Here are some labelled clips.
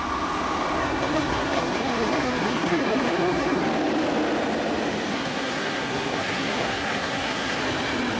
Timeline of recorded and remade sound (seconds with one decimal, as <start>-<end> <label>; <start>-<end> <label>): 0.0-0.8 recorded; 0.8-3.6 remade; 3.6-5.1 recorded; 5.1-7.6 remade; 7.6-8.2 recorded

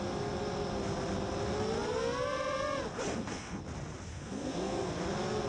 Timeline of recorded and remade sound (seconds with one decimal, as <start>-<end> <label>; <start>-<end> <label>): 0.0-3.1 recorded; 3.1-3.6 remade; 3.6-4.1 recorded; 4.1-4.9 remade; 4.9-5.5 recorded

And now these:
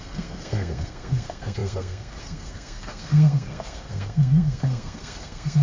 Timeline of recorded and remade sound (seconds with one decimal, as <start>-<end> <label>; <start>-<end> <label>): 0.0-5.6 remade

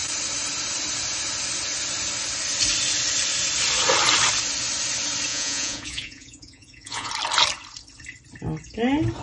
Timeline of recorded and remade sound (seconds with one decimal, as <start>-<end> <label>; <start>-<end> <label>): 0.0-5.3 recorded; 5.3-7.1 remade; 7.1-9.2 recorded

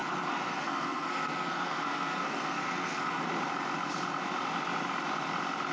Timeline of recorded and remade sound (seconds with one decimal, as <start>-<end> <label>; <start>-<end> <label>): 0.0-3.2 remade; 3.2-5.7 recorded